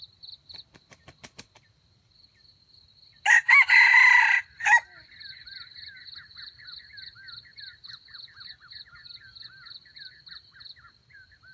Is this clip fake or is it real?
real